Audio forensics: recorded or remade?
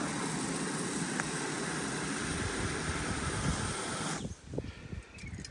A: recorded